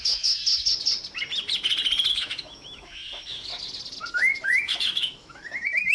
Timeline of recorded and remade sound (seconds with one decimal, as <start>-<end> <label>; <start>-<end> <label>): 0.0-0.4 remade; 0.4-2.1 recorded; 2.1-3.5 remade; 3.5-4.1 recorded; 4.1-5.9 remade